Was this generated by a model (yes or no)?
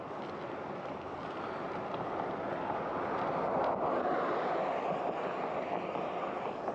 no